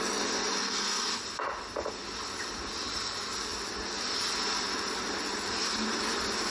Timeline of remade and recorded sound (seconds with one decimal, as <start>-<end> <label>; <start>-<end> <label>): 0.0-0.6 recorded; 0.6-1.2 remade; 1.2-6.5 recorded